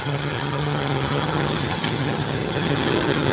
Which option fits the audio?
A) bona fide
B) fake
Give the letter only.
B